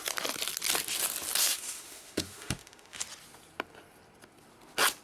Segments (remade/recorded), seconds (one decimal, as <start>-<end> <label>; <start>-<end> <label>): 0.0-1.4 recorded; 1.4-3.0 remade; 3.0-5.0 recorded